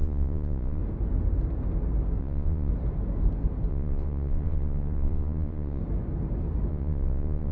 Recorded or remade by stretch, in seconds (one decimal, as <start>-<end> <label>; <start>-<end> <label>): 0.0-0.8 remade; 0.8-2.2 recorded; 2.2-2.7 remade; 2.7-3.7 recorded; 3.7-5.8 remade; 5.8-6.7 recorded; 6.7-7.5 remade